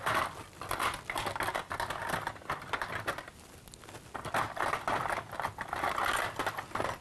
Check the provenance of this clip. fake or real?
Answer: real